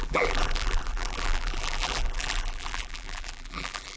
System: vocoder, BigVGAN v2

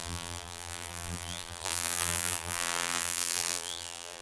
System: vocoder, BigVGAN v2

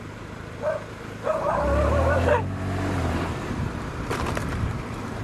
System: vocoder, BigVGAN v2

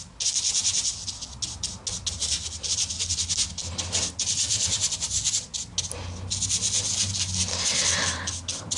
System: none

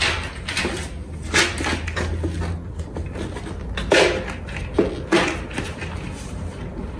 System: none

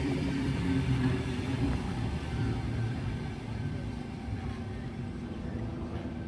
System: vocoder, BigVGAN v2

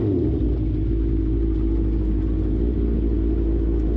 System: none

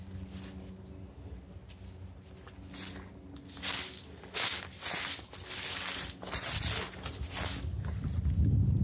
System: none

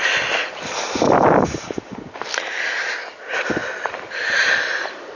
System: none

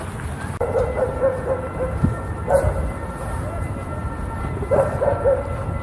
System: none